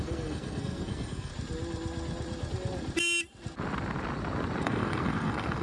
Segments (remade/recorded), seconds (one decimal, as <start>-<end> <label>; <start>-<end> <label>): 0.0-1.3 remade; 1.3-4.6 recorded; 4.6-5.6 remade